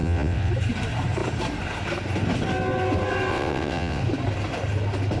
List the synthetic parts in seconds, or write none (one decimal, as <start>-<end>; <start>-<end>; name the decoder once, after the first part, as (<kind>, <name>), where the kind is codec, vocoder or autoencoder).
0.0-0.5 (vocoder, WaveNeXt); 3.3-4.0